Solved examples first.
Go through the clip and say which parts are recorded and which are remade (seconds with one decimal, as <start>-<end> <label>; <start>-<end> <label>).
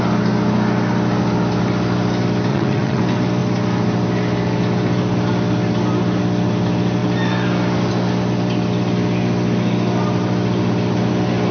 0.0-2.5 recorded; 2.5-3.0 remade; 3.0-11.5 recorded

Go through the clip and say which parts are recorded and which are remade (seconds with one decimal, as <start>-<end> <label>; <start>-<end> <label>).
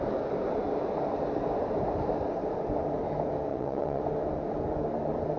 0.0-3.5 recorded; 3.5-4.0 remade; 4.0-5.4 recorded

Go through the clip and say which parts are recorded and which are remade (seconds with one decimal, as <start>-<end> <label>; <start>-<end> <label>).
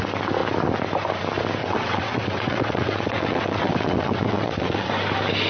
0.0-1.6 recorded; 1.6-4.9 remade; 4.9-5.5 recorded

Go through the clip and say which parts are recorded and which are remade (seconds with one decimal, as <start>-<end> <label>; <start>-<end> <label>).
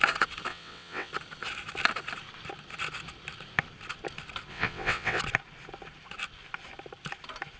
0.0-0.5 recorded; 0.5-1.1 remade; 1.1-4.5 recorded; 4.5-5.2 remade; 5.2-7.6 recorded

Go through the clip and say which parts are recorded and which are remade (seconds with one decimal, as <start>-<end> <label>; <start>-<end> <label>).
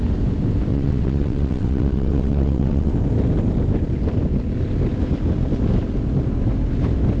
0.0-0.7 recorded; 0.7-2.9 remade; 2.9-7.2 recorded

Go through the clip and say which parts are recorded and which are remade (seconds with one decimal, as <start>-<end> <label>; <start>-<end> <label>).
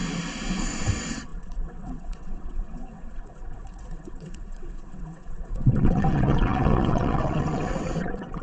0.0-0.8 recorded; 0.8-8.4 remade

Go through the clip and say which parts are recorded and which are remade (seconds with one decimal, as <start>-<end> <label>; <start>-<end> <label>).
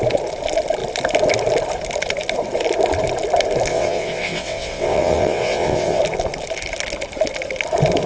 0.0-3.7 recorded; 3.7-6.0 remade; 6.0-8.1 recorded